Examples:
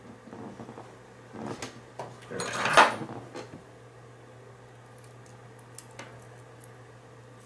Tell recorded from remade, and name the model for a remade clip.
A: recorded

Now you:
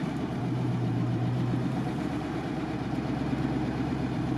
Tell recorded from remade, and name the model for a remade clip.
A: remade, vocoder, BigVGAN v2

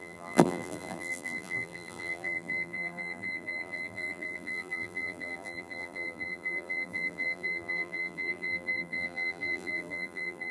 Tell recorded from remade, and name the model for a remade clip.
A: remade, vocoder, BigVGAN v2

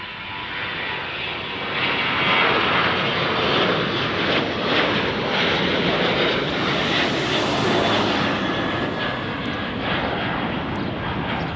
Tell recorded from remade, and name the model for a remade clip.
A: recorded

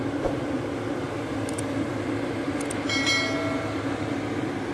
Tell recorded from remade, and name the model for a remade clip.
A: recorded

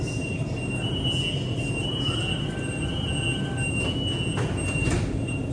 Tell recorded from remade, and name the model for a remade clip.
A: recorded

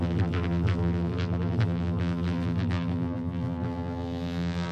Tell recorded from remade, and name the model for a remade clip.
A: remade, vocoder, BigVGAN v2